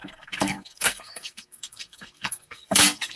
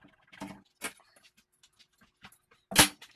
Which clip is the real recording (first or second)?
second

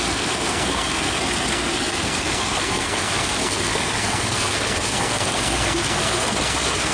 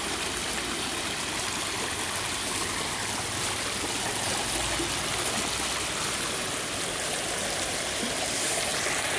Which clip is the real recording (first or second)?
second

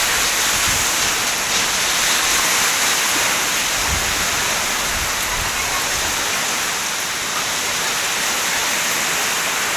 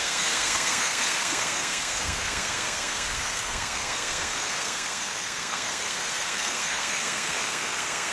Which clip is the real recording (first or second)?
first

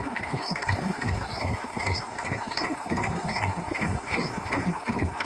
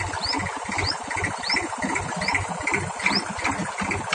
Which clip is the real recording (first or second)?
second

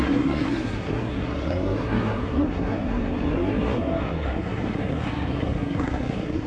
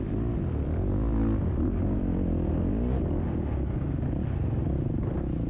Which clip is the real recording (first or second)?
second